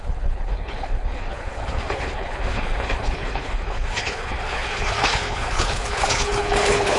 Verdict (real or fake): fake